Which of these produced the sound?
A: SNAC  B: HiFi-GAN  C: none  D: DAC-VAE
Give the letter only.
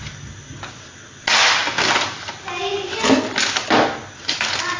C